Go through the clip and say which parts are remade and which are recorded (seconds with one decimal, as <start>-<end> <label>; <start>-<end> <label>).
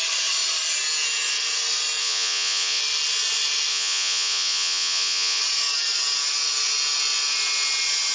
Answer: 0.0-2.0 recorded; 2.0-2.8 remade; 2.8-3.7 recorded; 3.7-5.4 remade; 5.4-8.1 recorded